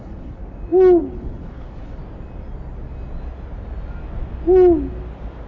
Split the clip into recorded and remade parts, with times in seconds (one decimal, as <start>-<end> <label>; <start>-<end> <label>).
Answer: 0.0-0.4 remade; 0.4-1.0 recorded; 1.0-2.0 remade; 2.0-5.5 recorded